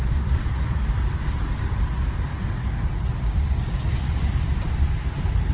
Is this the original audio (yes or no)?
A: yes